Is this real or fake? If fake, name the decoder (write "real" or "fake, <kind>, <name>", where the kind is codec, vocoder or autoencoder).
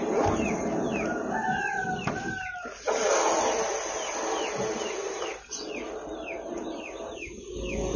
real